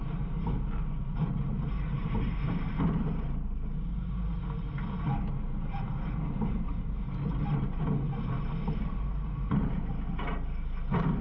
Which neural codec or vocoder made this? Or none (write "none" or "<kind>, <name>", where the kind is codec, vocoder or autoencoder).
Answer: none